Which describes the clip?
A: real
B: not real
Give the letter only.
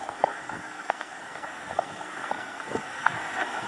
B